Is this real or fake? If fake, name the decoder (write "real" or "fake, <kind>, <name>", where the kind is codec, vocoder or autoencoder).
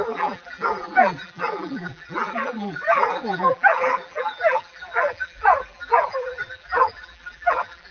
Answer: fake, vocoder, BigVGAN v2